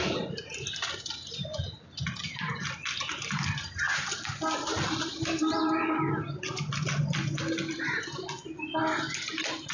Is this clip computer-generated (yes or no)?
no